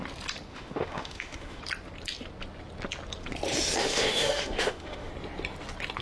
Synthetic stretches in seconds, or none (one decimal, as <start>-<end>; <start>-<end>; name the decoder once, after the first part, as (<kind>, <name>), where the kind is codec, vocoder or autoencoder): 0.5-1.6 (autoencoder, DAC-VAE); 3.8-5.1